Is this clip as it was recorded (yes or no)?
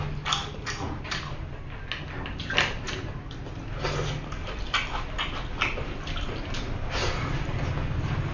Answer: yes